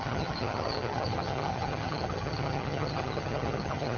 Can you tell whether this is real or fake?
fake